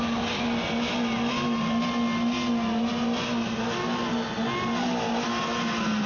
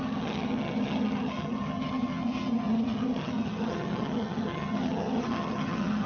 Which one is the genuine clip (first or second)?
first